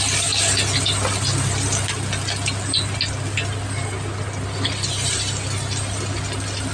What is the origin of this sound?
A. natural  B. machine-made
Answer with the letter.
A